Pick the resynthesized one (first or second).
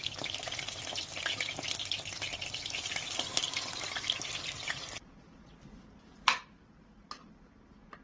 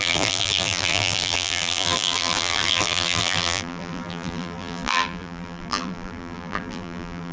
second